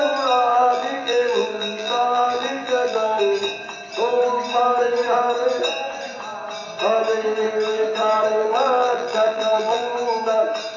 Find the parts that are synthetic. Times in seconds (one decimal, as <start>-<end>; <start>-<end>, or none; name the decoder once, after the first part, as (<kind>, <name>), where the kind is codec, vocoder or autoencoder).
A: 0.5-3.2 (vocoder, BigVGAN v2); 8.4-9.9